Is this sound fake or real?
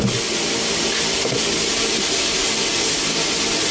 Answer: real